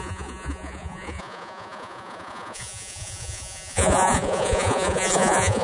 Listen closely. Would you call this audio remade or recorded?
remade